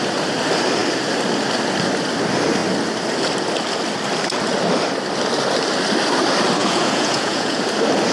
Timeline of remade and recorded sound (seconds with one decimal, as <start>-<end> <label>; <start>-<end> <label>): 0.0-6.6 recorded; 6.6-7.6 remade; 7.6-8.1 recorded

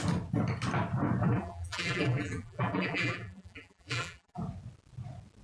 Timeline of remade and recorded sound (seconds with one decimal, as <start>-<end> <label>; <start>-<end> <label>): 0.0-1.2 recorded; 1.2-4.4 remade; 4.4-5.4 recorded

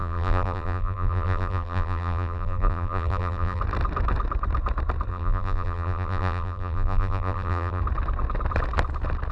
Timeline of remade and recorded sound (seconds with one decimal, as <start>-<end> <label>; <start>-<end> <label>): 0.0-3.6 remade; 3.6-5.1 recorded; 5.1-7.8 remade; 7.8-9.3 recorded

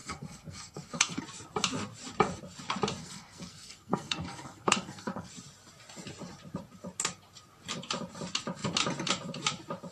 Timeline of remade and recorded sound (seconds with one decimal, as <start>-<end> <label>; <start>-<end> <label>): 0.0-1.2 remade; 1.2-3.0 recorded; 3.0-5.3 remade; 5.3-9.9 recorded

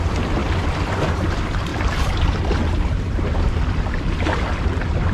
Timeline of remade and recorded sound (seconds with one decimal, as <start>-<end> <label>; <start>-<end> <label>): 0.0-5.1 remade

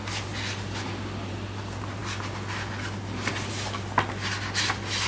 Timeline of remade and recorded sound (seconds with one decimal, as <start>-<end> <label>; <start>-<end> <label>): 0.0-5.1 recorded

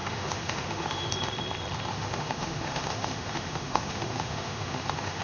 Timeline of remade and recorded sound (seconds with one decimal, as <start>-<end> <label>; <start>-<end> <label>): 0.0-1.1 remade; 1.1-1.9 recorded; 1.9-5.2 remade